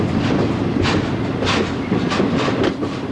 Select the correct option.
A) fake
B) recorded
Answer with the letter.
B